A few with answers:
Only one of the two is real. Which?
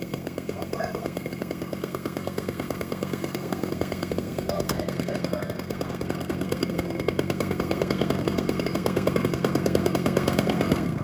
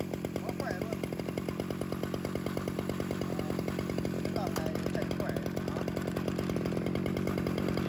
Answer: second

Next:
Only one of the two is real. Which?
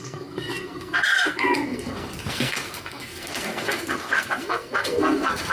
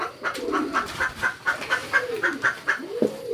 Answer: second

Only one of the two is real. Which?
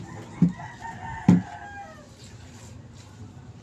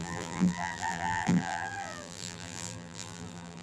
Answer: first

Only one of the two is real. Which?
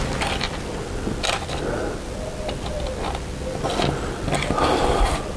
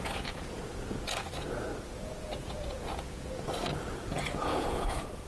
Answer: first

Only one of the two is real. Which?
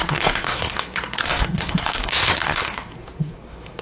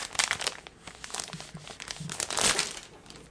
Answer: second